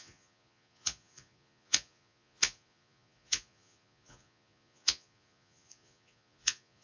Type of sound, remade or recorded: remade